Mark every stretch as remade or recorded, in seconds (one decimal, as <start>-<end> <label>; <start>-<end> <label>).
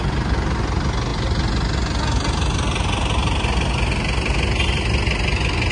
0.0-5.7 recorded